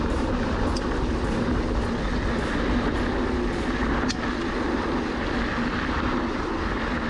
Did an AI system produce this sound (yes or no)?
no